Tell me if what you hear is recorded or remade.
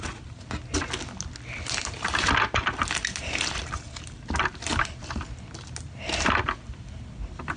recorded